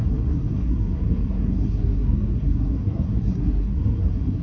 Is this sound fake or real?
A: fake